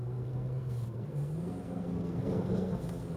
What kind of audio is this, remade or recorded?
remade